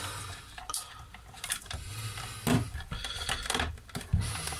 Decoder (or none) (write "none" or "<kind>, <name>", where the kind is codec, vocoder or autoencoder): vocoder, BigVGAN v2